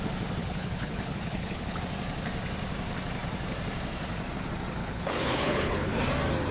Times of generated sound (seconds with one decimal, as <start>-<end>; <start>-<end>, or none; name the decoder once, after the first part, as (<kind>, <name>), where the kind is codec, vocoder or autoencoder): 0.4-1.8 (codec, HILCodec); 4.8-6.0